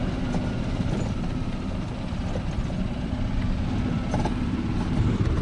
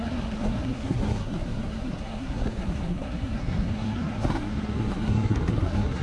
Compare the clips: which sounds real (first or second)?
first